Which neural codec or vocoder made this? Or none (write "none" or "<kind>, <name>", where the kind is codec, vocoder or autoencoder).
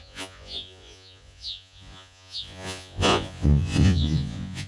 vocoder, Vocos